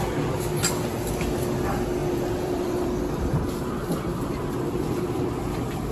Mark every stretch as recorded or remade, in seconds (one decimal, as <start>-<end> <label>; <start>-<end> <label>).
0.0-2.0 recorded; 2.0-3.0 remade; 3.0-4.1 recorded; 4.1-5.9 remade